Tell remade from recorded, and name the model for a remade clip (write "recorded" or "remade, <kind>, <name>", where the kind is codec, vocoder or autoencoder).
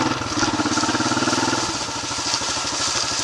recorded